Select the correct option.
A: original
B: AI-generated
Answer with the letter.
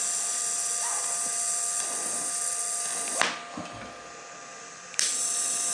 A